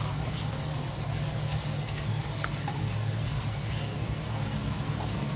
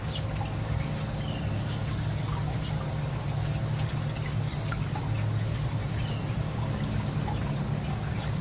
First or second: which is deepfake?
first